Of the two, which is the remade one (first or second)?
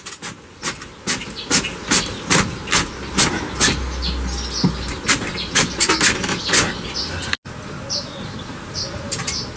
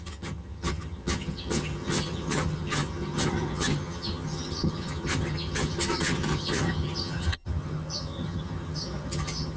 second